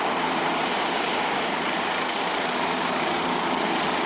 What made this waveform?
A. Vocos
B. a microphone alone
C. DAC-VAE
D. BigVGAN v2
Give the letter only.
D